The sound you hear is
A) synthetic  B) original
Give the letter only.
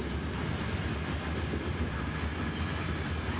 B